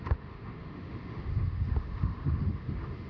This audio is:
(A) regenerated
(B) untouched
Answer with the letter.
A